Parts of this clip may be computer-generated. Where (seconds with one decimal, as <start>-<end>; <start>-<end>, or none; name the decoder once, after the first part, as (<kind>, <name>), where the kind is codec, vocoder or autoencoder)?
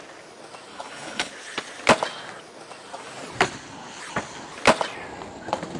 0.7-1.3 (codec, HILCodec)